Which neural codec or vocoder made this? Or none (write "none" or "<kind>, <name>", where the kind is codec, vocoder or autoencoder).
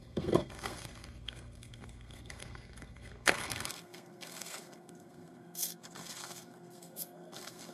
codec, SNAC